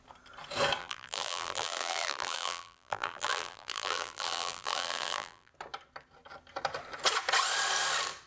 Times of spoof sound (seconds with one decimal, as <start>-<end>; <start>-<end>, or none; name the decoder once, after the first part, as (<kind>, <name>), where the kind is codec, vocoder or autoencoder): 0.8-5.5 (vocoder, BigVGAN v2)